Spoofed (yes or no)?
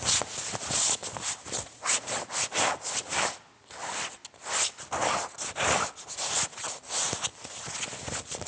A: no